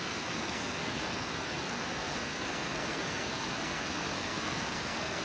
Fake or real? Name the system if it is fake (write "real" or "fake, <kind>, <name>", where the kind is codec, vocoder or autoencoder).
fake, codec, SNAC